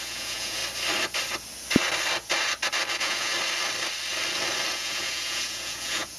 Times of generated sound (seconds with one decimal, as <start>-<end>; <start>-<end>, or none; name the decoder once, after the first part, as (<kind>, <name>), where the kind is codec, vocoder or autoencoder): 0.0-0.6 (vocoder, Vocos); 2.9-3.3; 4.7-6.2